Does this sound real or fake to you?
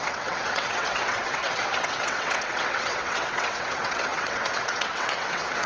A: fake